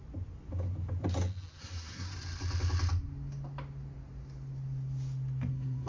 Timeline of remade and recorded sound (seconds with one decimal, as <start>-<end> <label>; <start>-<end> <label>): 0.0-1.6 recorded; 1.6-2.1 remade; 2.1-5.5 recorded; 5.5-5.9 remade